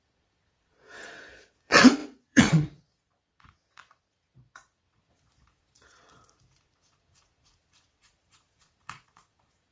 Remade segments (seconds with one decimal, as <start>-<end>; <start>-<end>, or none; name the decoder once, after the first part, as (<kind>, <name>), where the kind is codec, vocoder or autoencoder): 0.0-9.7 (vocoder, Vocos)